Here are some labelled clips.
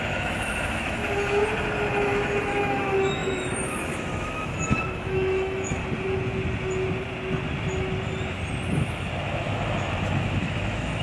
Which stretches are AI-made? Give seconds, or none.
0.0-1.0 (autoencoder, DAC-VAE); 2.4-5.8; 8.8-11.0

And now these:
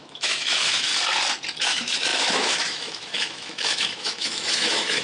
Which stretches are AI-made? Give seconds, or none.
0.0-0.9 (autoencoder, DAC-VAE); 1.6-5.0

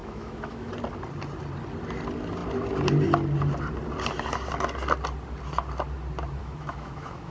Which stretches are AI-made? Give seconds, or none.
0.0-0.7 (autoencoder, DAC-VAE); 6.4-7.3

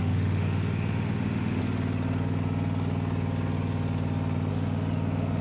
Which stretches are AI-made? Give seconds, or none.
0.0-1.6 (autoencoder, DAC-VAE); 4.5-5.4

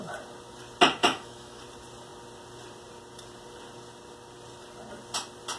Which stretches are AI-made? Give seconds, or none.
1.0-1.6 (autoencoder, DAC-VAE)

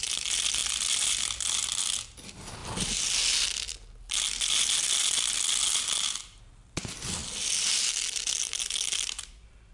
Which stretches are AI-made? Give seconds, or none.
none

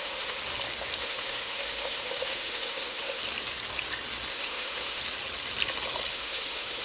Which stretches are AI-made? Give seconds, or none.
0.0-0.4 (autoencoder, DAC-VAE); 1.0-3.2; 4.3-5.0; 6.1-6.8